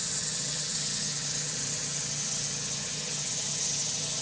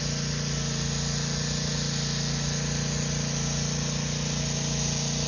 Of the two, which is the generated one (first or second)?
first